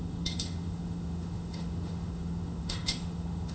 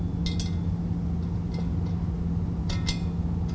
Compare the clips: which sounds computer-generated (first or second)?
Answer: first